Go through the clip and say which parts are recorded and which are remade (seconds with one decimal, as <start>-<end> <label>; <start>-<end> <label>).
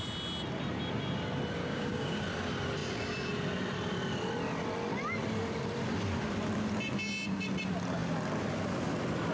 0.0-1.6 recorded; 1.6-2.2 remade; 2.2-9.3 recorded